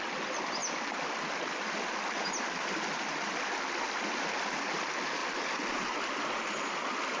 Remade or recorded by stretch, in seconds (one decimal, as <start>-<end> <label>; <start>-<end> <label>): 0.0-7.2 recorded